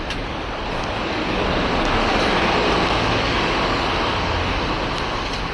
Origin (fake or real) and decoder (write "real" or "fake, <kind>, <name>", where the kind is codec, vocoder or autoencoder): real